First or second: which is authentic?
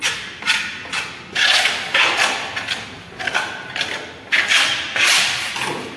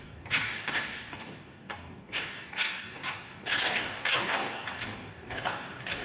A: first